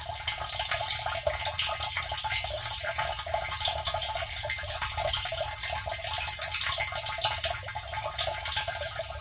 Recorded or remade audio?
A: recorded